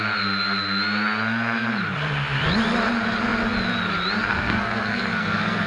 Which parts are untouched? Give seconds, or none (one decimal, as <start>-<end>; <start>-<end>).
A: 0.0-4.3